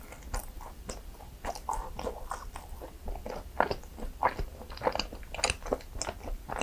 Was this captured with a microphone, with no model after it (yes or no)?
yes